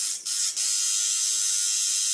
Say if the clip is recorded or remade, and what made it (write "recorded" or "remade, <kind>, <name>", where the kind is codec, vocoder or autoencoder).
recorded